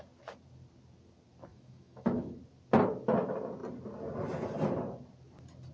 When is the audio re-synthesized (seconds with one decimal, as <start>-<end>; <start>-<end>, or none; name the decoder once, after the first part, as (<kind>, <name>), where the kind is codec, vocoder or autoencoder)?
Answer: 1.5-2.4 (autoencoder, DAC-VAE)